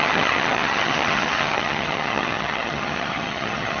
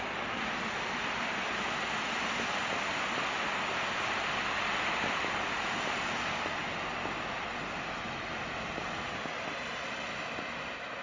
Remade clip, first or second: first